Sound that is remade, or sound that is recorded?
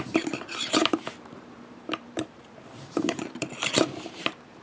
remade